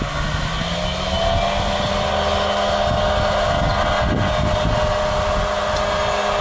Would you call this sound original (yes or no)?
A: yes